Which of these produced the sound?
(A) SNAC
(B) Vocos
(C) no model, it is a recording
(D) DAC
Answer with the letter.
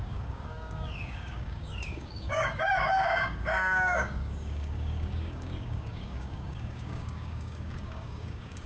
D